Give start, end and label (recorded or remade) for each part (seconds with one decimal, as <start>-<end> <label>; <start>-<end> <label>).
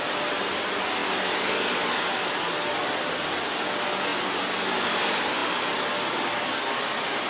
0.0-7.3 recorded